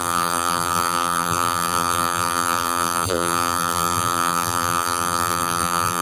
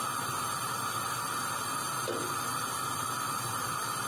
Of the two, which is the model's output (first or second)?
first